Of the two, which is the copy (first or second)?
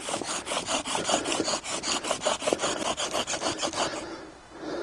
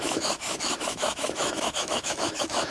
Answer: second